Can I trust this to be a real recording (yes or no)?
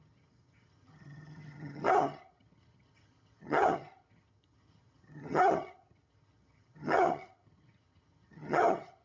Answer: no